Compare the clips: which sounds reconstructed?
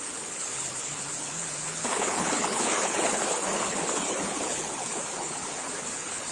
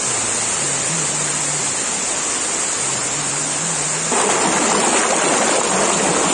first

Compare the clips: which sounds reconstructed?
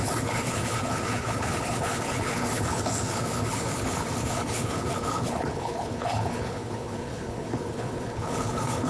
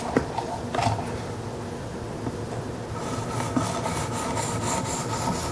first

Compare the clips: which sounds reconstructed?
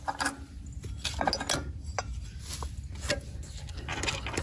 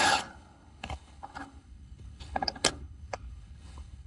second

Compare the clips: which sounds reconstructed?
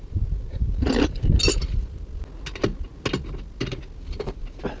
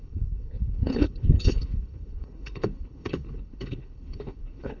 second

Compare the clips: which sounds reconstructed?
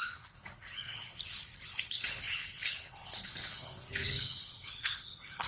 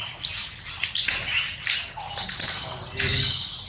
first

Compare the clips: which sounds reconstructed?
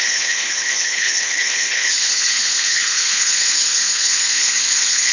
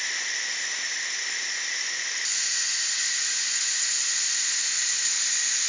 first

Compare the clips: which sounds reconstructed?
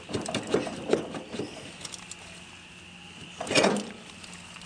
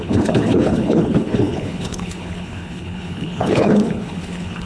second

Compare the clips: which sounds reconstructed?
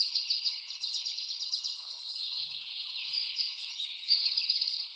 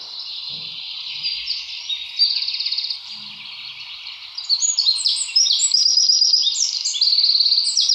first